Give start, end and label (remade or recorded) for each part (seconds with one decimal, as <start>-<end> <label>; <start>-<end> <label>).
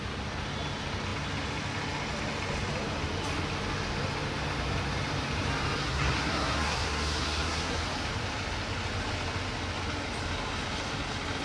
0.0-5.8 recorded; 5.8-7.8 remade; 7.8-11.4 recorded